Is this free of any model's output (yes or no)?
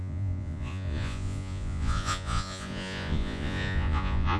no